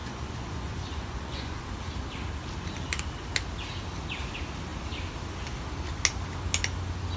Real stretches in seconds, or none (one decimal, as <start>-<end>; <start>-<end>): 1.6-7.2